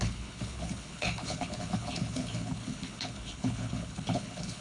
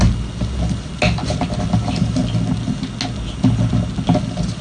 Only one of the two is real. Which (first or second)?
second